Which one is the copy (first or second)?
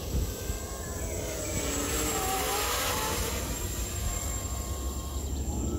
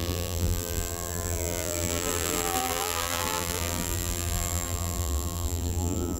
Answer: second